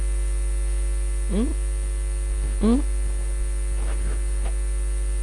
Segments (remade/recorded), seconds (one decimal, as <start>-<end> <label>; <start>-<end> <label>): 0.0-5.2 recorded